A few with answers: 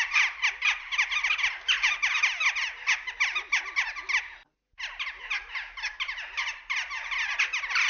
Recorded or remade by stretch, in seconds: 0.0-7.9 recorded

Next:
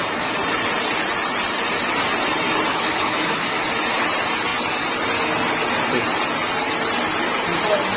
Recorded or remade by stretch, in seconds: 0.0-2.7 recorded; 2.7-3.6 remade; 3.6-8.0 recorded

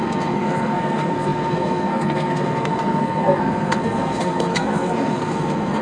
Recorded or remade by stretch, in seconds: 0.0-5.8 remade

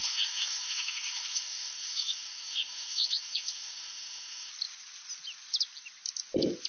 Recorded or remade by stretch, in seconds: 0.0-4.5 remade; 4.5-6.7 recorded

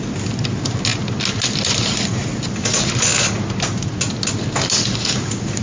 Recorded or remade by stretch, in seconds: 0.0-5.6 recorded